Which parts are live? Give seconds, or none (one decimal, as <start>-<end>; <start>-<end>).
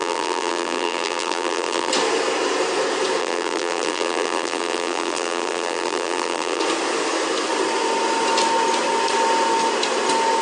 1.9-3.2; 6.6-10.4